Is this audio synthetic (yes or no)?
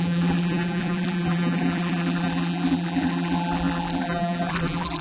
yes